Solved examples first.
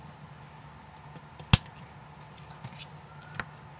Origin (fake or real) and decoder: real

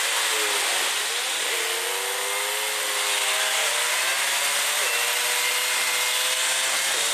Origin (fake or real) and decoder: real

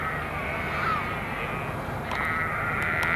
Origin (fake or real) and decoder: real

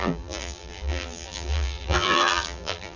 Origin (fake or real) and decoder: fake, vocoder, BigVGAN v2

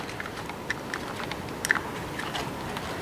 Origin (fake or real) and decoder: real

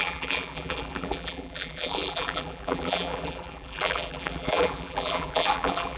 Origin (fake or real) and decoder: fake, vocoder, BigVGAN v2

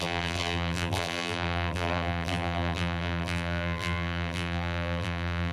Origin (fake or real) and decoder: fake, vocoder, BigVGAN v2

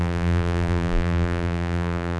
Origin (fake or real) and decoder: fake, vocoder, BigVGAN v2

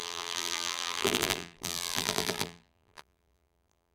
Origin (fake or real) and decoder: fake, vocoder, BigVGAN v2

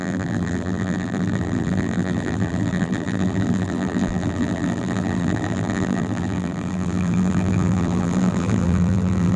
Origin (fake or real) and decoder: fake, vocoder, BigVGAN v2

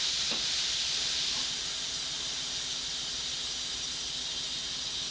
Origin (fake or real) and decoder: real